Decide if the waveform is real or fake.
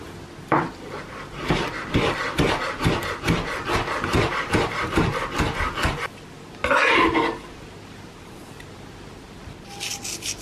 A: real